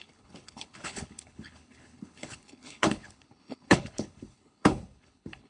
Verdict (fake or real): fake